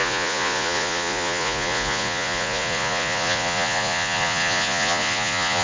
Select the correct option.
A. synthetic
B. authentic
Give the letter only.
A